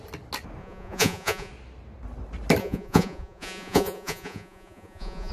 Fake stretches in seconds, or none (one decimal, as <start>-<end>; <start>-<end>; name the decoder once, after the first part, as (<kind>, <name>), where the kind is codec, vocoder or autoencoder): 0.6-1.5 (vocoder, Vocos); 2.6-5.3